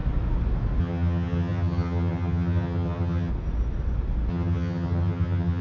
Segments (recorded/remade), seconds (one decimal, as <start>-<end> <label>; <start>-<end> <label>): 0.0-0.8 recorded; 0.8-3.3 remade; 3.3-4.3 recorded; 4.3-5.6 remade